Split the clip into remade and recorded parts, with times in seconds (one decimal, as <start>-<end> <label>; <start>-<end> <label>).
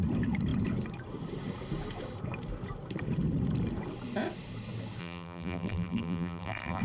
0.0-5.0 recorded; 5.0-6.8 remade